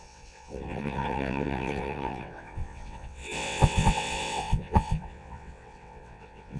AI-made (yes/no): yes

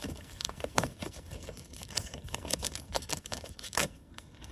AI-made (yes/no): yes